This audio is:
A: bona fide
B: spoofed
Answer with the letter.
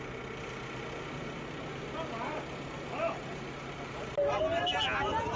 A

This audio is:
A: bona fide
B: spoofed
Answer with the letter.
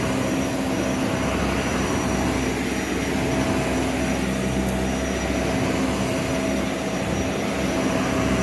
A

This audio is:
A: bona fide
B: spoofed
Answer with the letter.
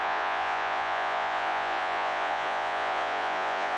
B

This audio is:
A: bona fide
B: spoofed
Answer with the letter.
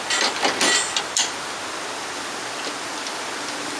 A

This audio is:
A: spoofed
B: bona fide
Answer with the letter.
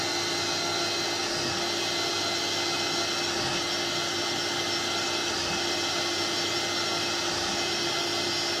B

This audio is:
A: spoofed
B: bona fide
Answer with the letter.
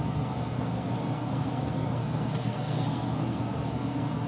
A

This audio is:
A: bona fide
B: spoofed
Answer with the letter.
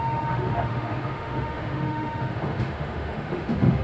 B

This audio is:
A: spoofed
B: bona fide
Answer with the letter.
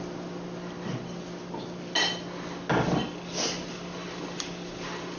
B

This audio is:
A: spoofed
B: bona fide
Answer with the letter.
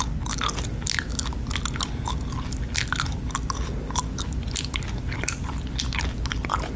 B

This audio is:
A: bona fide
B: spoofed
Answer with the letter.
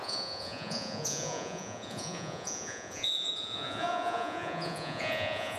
B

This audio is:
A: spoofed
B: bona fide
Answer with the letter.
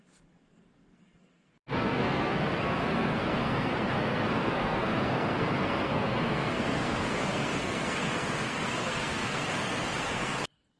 A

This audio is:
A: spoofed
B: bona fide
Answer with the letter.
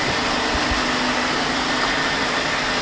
B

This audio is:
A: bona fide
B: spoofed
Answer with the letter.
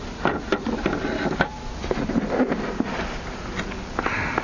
A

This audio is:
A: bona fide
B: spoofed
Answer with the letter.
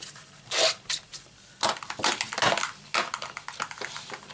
A